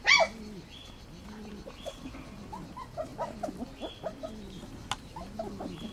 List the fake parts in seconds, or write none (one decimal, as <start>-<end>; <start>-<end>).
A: none